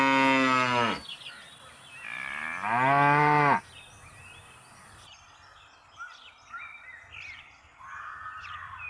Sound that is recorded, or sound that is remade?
recorded